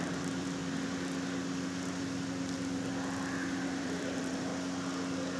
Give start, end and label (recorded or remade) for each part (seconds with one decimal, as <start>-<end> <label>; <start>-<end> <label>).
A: 0.0-0.6 remade; 0.6-3.8 recorded; 3.8-4.5 remade; 4.5-5.4 recorded